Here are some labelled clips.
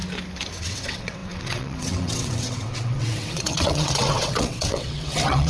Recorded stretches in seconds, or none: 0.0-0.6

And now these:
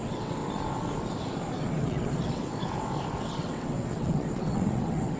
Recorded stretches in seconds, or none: 0.4-1.6; 2.5-3.2

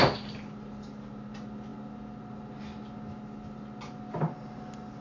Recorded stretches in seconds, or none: 0.0-5.0

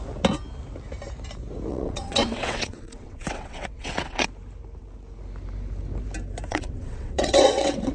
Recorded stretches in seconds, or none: 0.0-1.7; 4.3-6.5

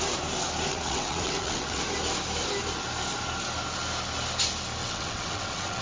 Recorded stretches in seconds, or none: 0.0-0.7; 1.8-4.8

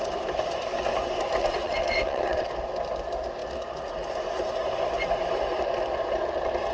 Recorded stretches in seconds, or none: 0.0-1.4; 2.5-6.7

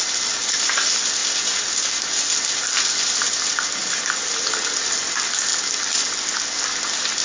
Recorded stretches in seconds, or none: 0.0-7.2

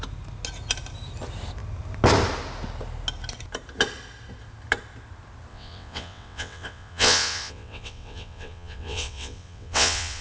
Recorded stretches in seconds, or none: 0.0-5.5